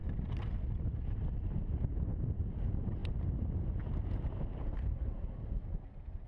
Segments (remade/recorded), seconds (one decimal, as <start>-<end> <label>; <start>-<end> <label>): 0.0-1.1 recorded; 1.1-3.0 remade; 3.0-4.3 recorded; 4.3-6.3 remade